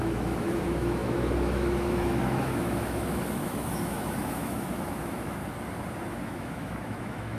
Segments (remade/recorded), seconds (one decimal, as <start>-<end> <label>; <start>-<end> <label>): 0.0-5.4 remade; 5.4-6.1 recorded; 6.1-7.4 remade